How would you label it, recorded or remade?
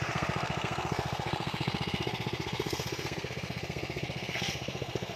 remade